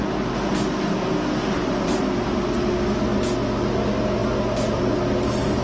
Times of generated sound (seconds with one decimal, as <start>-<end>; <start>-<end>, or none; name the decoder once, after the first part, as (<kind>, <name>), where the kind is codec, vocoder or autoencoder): none

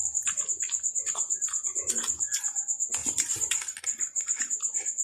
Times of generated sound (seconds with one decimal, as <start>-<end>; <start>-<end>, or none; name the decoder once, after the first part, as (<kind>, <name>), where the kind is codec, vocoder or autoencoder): 0.0-1.9 (vocoder, BigVGAN v2); 3.0-4.4